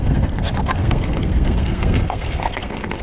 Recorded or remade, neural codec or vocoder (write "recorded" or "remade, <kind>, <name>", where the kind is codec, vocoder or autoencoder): remade, codec, SNAC